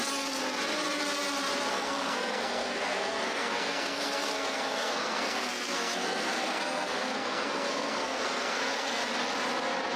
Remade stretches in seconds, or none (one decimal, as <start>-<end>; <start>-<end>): 1.7-9.0